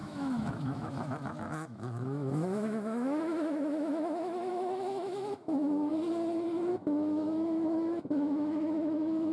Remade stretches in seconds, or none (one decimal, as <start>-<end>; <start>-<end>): 0.0-5.9; 6.7-9.3